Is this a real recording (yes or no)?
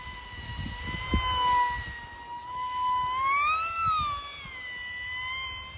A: yes